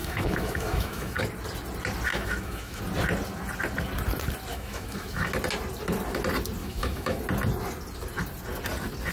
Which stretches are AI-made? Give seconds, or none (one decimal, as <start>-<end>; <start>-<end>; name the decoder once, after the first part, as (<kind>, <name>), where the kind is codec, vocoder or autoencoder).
0.0-1.2 (autoencoder, DAC-VAE); 2.1-2.8; 4.5-5.3; 6.6-7.2